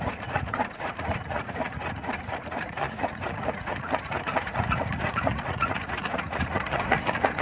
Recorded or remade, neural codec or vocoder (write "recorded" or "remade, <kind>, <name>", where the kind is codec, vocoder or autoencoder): remade, vocoder, Vocos